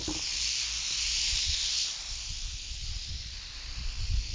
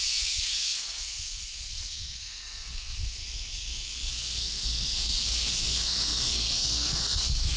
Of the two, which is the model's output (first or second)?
second